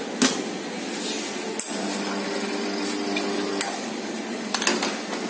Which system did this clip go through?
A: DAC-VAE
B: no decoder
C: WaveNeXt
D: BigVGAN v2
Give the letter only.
B